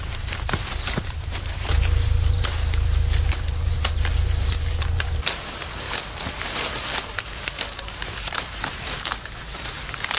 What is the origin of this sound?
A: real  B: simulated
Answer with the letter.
B